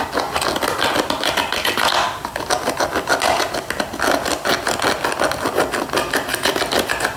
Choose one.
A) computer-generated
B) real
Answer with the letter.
B